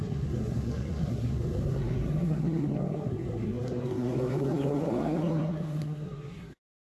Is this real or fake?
fake